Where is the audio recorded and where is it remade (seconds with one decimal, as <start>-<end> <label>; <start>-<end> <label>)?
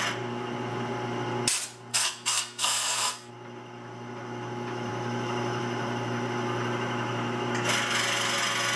0.0-1.9 recorded; 1.9-3.3 remade; 3.3-8.8 recorded